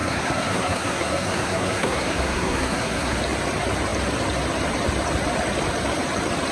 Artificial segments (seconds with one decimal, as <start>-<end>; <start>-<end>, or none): 0.0-3.2